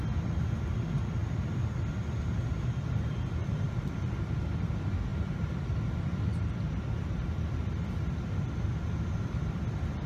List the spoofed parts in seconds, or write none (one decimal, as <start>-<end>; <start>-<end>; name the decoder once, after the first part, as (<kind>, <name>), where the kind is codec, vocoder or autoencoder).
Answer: 3.4-4.2 (vocoder, BigVGAN v2); 5.1-5.8; 6.3-7.4